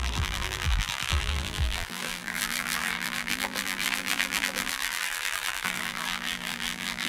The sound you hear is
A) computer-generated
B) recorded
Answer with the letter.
A